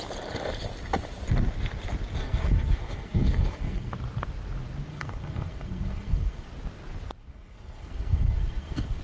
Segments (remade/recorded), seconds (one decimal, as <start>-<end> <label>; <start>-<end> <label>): 0.0-2.2 recorded; 2.2-3.9 remade; 3.9-4.9 recorded; 4.9-6.5 remade; 6.5-7.2 recorded; 7.2-9.0 remade

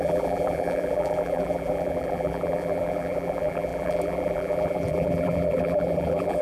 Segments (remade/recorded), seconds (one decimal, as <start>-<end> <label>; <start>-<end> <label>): 0.0-6.4 remade

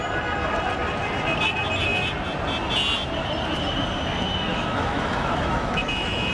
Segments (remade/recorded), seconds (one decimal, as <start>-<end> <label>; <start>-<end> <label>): 0.0-4.5 recorded; 4.5-6.3 remade

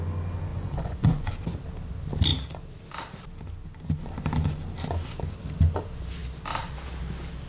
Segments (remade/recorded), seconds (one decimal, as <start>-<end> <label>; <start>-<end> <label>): 0.0-0.5 recorded; 0.5-1.3 remade; 1.3-7.5 recorded

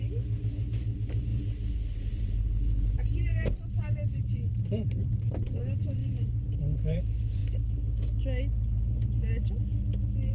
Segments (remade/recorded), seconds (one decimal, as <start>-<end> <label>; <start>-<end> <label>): 0.0-6.0 remade; 6.0-6.9 recorded; 6.9-7.4 remade; 7.4-10.3 recorded

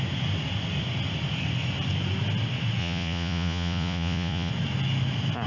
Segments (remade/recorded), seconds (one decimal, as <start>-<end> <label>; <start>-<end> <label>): 0.0-2.8 recorded; 2.8-4.5 remade; 4.5-5.5 recorded

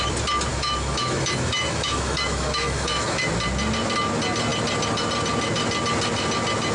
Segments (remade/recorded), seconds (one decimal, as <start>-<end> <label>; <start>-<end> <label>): 0.0-0.5 recorded; 0.5-3.2 remade; 3.2-6.7 recorded

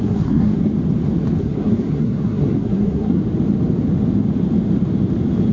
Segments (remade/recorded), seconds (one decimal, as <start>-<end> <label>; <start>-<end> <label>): 0.0-0.7 remade; 0.7-1.4 recorded; 1.4-3.2 remade; 3.2-5.5 recorded